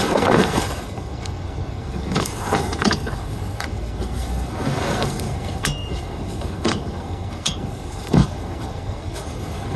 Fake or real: fake